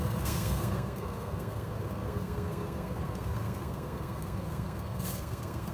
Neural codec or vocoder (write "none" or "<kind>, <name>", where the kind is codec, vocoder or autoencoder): codec, SNAC